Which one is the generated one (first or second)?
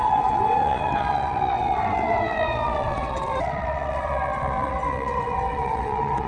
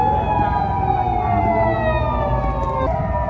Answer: first